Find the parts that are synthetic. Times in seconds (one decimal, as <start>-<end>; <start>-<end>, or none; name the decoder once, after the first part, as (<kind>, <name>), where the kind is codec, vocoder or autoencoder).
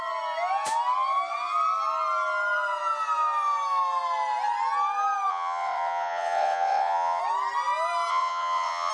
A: 5.3-7.2 (vocoder, WaveNeXt); 8.1-8.9